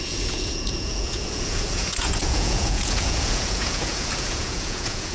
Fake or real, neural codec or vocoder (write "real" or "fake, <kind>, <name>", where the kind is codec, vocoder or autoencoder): fake, vocoder, Vocos